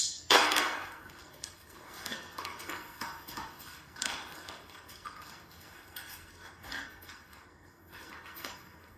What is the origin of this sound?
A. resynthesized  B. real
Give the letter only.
A